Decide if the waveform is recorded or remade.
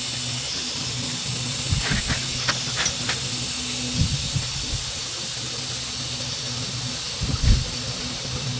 recorded